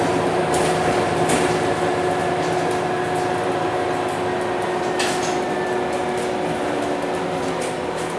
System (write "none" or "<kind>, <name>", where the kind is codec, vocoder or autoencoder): none